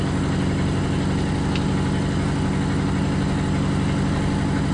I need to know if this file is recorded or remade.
recorded